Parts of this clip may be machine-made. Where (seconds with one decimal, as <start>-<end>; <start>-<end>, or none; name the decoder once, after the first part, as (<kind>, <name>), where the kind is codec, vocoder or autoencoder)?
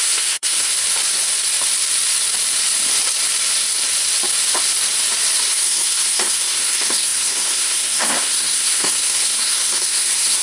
0.0-0.7 (codec, SNAC); 5.5-10.4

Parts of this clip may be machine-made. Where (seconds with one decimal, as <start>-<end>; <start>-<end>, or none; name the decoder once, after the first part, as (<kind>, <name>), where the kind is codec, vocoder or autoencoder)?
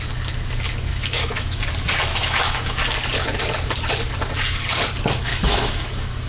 0.9-1.6 (autoencoder, DAC-VAE); 2.1-2.8; 5.3-6.3